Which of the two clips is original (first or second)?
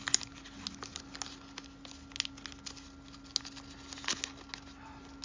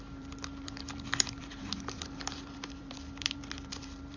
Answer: first